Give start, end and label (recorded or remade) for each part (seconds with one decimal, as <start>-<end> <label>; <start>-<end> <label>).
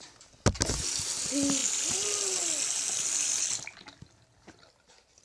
0.0-5.2 recorded